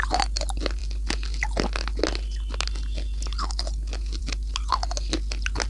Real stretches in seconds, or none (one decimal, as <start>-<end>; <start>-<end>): 0.0-5.7